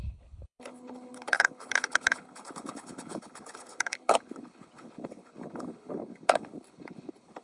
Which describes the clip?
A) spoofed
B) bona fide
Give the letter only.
A